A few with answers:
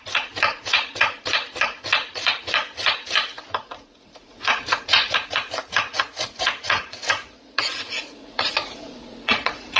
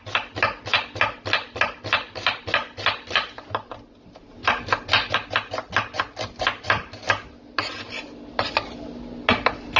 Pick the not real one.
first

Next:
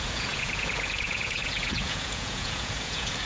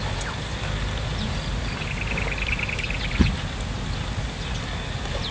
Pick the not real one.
first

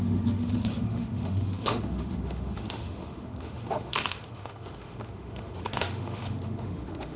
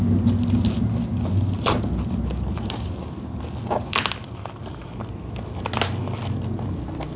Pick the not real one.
first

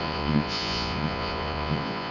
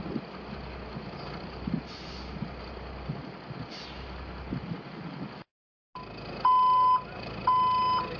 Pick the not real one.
first